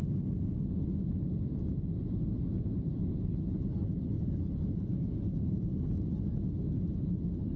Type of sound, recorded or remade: recorded